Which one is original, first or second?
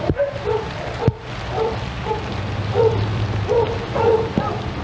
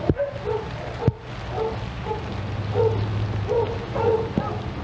second